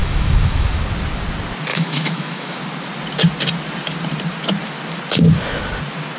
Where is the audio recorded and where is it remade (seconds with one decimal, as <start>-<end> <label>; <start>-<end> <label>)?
0.0-0.8 remade; 0.8-1.7 recorded; 1.7-2.6 remade; 2.6-6.2 recorded